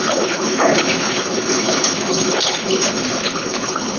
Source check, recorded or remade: remade